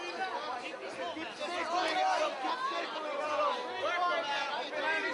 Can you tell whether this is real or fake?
real